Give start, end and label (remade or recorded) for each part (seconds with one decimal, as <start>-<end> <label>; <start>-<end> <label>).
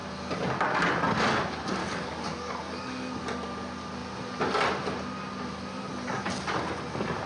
0.0-1.8 recorded; 1.8-3.1 remade; 3.1-7.3 recorded